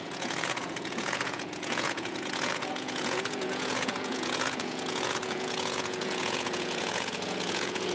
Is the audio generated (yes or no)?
yes